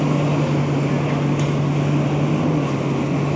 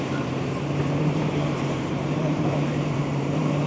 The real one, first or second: first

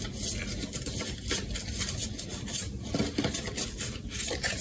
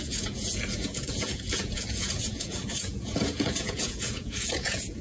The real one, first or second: first